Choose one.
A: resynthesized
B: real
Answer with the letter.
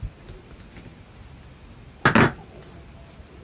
B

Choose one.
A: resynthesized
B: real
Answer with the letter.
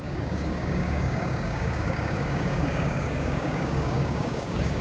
A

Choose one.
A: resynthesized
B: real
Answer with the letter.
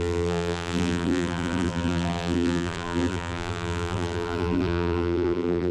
A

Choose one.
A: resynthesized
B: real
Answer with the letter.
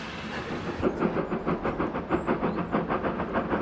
B